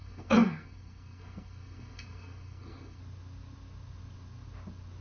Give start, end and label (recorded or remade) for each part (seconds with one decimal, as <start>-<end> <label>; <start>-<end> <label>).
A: 0.0-3.0 remade; 3.0-5.0 recorded